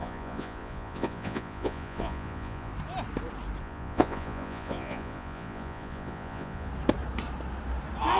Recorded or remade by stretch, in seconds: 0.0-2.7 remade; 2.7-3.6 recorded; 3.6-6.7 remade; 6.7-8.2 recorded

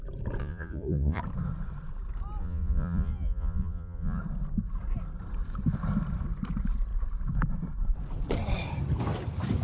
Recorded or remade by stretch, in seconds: 0.0-0.4 recorded; 0.4-1.2 remade; 1.2-2.4 recorded; 2.4-4.2 remade; 4.2-9.6 recorded

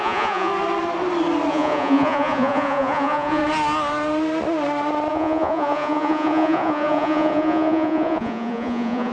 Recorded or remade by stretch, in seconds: 0.0-0.5 remade; 0.5-1.5 recorded; 1.5-3.4 remade; 3.4-5.1 recorded; 5.1-9.1 remade

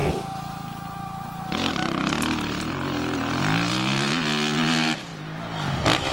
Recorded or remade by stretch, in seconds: 0.0-6.1 recorded

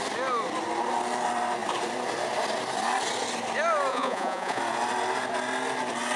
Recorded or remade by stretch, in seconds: 0.0-3.9 recorded; 3.9-4.6 remade; 4.6-6.2 recorded

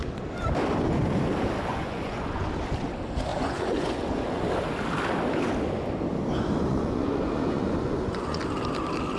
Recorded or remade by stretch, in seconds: 0.0-1.7 recorded; 1.7-2.5 remade; 2.5-3.3 recorded; 3.3-4.4 remade; 4.4-6.7 recorded; 6.7-8.4 remade; 8.4-9.2 recorded